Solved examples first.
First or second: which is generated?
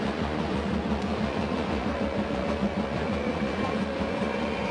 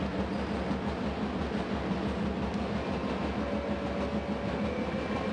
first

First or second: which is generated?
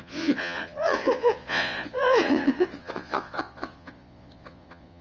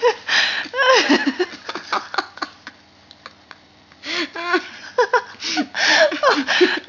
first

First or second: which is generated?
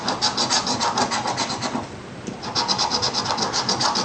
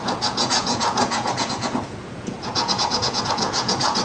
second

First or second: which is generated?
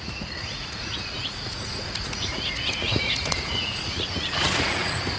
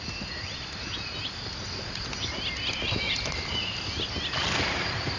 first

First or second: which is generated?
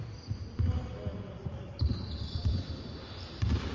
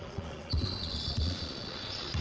second